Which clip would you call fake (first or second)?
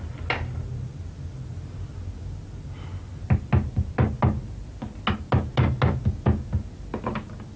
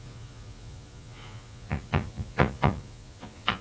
second